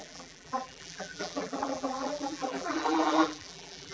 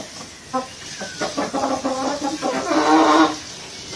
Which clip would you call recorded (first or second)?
second